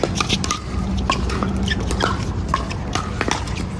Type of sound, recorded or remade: recorded